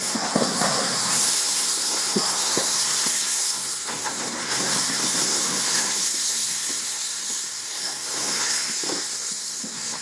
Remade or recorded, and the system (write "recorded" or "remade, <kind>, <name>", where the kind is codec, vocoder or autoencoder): remade, codec, SNAC